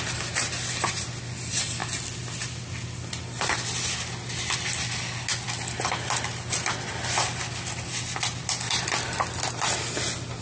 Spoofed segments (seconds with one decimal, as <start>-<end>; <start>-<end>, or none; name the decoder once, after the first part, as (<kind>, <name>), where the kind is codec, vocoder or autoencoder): none